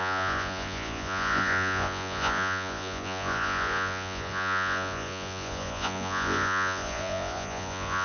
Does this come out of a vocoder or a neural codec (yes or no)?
yes